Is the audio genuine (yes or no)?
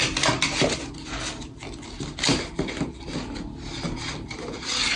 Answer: yes